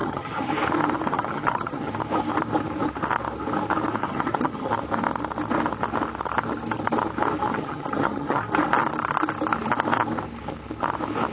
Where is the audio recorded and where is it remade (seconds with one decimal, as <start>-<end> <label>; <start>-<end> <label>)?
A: 0.0-0.5 remade; 0.5-1.1 recorded; 1.1-1.9 remade; 1.9-4.0 recorded; 4.0-4.7 remade; 4.7-7.5 recorded; 7.5-8.4 remade; 8.4-11.3 recorded